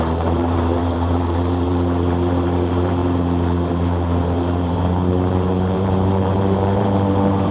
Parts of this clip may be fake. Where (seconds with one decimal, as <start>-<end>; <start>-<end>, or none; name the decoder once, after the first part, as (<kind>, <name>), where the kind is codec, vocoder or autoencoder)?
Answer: 0.0-7.5 (vocoder, BigVGAN v2)